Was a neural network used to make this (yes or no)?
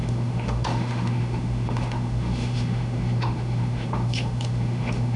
yes